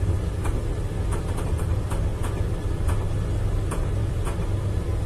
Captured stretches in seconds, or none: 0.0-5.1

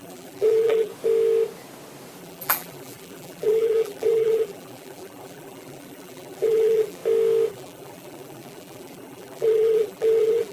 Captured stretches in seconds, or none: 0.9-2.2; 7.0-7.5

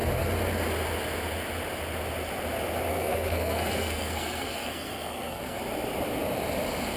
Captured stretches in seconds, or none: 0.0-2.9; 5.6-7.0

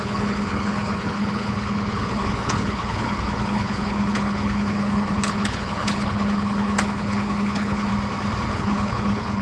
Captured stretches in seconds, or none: 7.9-8.5

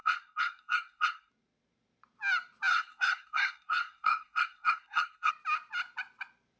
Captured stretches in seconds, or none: 1.3-2.7; 5.3-6.6

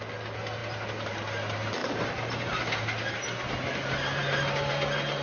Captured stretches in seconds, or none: 0.0-5.2

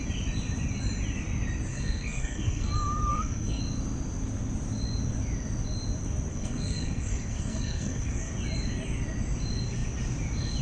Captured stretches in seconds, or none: 0.0-1.7; 2.7-3.1; 3.6-6.3; 8.3-10.6